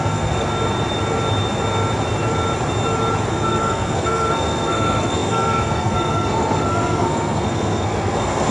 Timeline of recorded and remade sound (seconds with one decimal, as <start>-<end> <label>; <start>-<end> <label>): 0.0-0.5 remade; 0.5-3.3 recorded; 3.3-8.5 remade